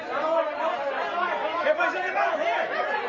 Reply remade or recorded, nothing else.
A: recorded